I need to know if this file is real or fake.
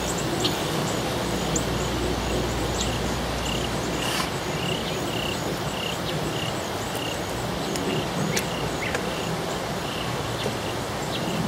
real